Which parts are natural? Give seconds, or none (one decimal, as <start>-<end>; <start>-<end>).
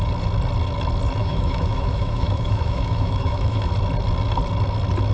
0.0-1.2; 3.7-5.1